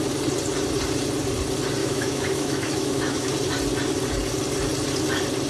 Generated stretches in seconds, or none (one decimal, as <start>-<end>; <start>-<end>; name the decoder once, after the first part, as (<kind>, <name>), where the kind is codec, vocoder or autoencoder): 1.8-3.3 (autoencoder, DAC-VAE)

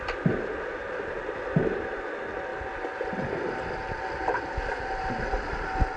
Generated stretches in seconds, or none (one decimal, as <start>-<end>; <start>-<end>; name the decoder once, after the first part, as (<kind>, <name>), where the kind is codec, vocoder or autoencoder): none